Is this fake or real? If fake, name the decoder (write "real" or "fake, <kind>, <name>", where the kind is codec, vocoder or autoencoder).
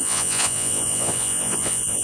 fake, vocoder, Vocos